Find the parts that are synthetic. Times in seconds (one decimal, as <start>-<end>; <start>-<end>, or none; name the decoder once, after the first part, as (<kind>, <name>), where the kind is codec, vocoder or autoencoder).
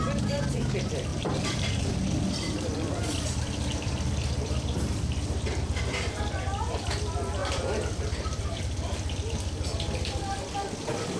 1.1-5.8 (vocoder, BigVGAN v2); 7.4-8.6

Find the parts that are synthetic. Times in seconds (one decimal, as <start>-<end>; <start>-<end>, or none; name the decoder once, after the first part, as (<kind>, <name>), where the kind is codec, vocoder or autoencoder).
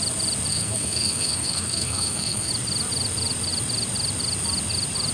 0.5-2.5 (codec, SNAC)